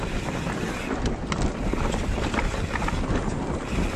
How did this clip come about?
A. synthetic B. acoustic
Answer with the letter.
B